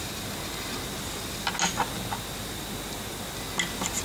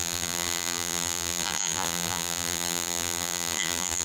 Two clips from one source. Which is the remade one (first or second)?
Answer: second